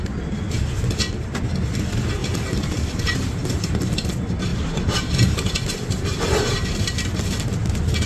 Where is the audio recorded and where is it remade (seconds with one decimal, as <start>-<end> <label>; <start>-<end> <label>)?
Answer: 0.0-2.2 recorded; 2.2-3.8 remade; 3.8-8.1 recorded